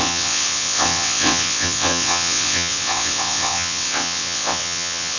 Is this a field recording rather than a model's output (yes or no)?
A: no